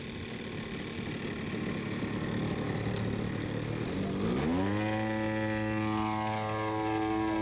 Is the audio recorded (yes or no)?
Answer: yes